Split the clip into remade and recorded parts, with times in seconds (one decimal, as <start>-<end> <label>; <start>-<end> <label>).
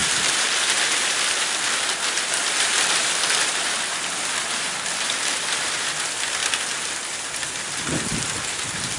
0.0-3.9 remade; 3.9-9.0 recorded